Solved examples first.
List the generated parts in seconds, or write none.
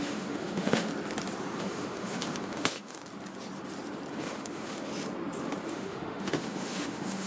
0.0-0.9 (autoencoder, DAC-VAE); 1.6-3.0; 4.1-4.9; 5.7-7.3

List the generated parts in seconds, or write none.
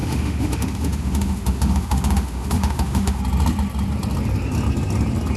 0.0-3.2 (autoencoder, DAC-VAE)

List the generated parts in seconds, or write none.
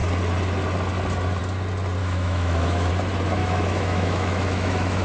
2.0-2.9 (autoencoder, DAC-VAE); 3.4-5.0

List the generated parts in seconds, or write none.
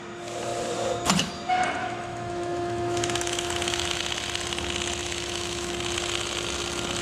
1.8-4.0 (autoencoder, DAC-VAE); 5.0-5.7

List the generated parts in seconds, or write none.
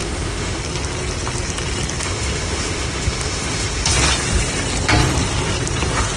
0.0-0.6 (autoencoder, DAC-VAE); 2.0-3.9